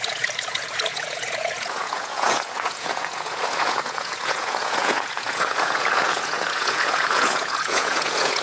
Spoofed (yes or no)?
yes